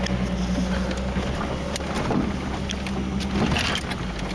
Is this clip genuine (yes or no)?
yes